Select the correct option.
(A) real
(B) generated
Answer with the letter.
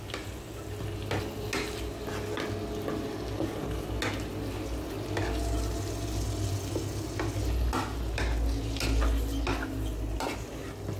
A